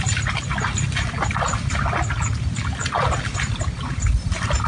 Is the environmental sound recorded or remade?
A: recorded